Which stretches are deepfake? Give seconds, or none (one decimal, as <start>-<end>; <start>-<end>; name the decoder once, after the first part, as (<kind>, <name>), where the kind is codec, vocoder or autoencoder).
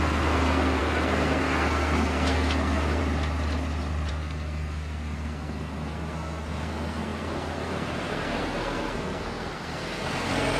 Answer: 0.0-3.0 (codec, SNAC); 4.1-10.6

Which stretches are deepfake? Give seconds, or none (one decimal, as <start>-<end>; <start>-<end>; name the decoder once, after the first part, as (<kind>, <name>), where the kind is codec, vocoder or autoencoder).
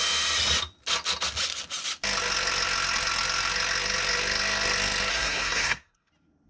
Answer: 5.1-6.1 (codec, SNAC)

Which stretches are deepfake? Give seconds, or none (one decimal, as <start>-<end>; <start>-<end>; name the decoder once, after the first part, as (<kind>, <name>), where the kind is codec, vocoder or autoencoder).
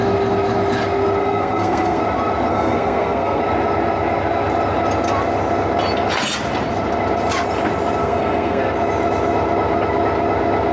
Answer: 1.2-2.0 (codec, SNAC); 2.5-3.4; 8.0-8.6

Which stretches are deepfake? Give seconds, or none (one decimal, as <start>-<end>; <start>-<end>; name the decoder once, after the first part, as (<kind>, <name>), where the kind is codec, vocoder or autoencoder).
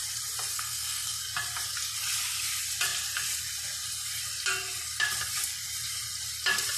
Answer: 0.5-1.2 (codec, SNAC)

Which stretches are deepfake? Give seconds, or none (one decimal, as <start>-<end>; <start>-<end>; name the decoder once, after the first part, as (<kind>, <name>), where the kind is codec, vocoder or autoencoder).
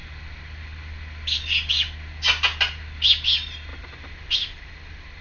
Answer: none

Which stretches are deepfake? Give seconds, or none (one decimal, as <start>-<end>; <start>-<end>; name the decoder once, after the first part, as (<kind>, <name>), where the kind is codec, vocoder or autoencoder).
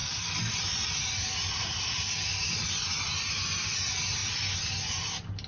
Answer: none